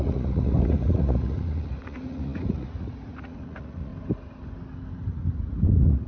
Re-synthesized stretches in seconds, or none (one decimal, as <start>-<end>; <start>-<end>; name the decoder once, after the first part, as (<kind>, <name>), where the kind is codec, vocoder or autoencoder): 0.0-3.9 (vocoder, Vocos); 5.1-6.1

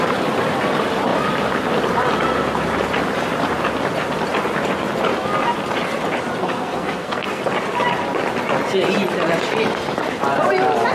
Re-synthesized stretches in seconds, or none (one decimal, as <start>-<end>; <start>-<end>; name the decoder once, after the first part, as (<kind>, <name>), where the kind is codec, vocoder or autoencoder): 6.4-7.4 (codec, SNAC)

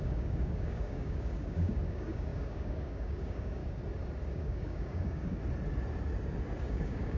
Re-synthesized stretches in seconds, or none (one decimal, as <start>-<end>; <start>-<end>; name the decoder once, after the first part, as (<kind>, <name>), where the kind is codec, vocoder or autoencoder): 0.0-3.6 (codec, DAC); 4.3-5.4; 6.6-7.2